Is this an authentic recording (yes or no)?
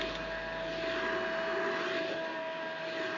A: yes